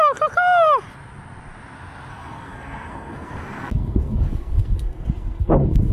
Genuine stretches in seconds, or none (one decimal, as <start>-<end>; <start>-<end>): 0.0-2.1